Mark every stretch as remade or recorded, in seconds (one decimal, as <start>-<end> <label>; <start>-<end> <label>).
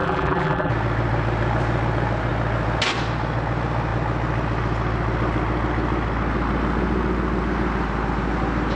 0.0-0.7 remade; 0.7-8.8 recorded